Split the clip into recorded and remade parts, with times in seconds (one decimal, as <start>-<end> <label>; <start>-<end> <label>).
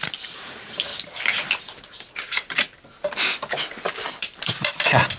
0.0-0.9 remade; 0.9-3.9 recorded; 3.9-5.2 remade